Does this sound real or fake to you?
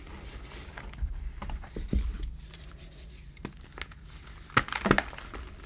real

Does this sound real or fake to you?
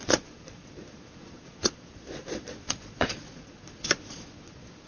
fake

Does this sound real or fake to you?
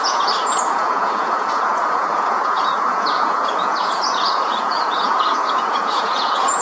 fake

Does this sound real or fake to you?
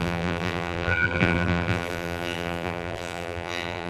fake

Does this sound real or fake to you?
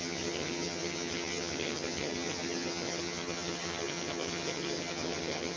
fake